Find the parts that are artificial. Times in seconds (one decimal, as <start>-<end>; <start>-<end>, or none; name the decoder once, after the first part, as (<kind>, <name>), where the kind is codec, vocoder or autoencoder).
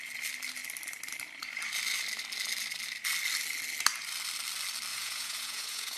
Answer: 4.9-6.0 (vocoder, Vocos)